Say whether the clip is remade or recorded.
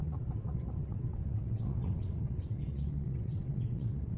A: remade